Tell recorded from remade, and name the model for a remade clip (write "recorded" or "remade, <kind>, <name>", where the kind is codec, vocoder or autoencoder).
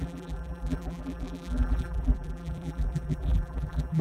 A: remade, vocoder, BigVGAN v2